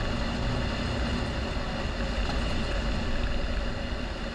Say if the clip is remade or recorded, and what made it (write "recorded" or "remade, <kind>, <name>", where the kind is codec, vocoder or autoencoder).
recorded